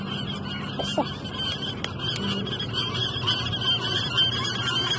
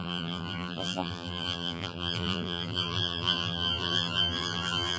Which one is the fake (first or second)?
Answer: second